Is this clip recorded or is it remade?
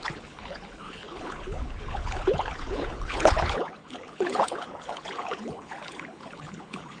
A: remade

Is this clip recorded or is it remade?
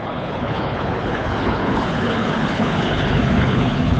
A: remade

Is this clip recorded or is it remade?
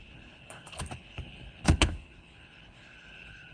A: remade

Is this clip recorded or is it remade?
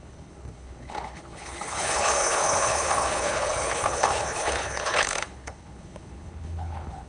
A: remade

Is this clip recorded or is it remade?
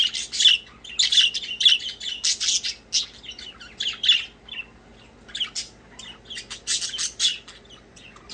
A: recorded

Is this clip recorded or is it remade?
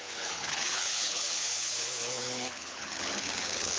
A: remade